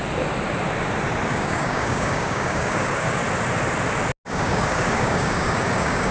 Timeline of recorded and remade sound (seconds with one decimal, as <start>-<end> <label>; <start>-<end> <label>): 0.0-1.3 recorded; 1.3-3.2 remade; 3.2-4.3 recorded; 4.3-6.1 remade